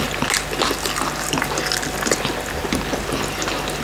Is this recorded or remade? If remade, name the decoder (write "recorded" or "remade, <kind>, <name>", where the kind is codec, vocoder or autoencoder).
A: recorded